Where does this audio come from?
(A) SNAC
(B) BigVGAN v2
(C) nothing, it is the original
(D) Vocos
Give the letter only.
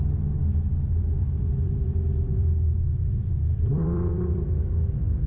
B